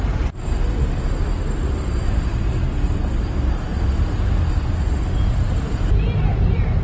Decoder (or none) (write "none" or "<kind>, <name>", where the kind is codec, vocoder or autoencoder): none